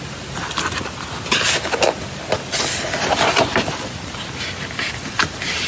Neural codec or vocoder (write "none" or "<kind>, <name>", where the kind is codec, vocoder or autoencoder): none